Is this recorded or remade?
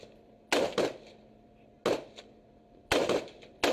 recorded